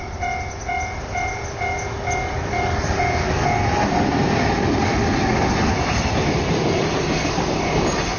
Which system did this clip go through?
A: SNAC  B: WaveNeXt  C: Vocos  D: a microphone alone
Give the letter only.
D